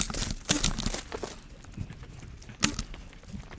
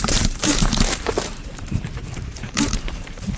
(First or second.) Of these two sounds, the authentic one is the first